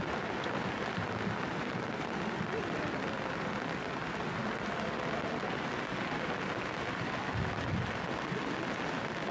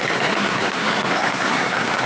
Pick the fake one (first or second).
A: second